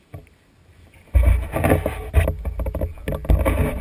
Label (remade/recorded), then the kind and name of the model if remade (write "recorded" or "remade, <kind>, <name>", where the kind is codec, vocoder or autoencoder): recorded